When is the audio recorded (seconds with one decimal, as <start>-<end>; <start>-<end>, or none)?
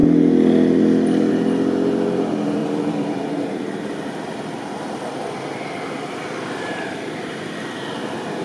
1.3-2.6; 7.5-8.4